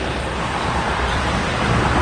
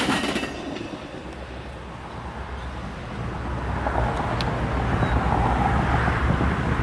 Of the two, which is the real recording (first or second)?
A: second